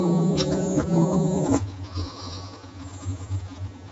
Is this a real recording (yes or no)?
no